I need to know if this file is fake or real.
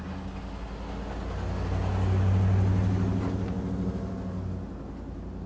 real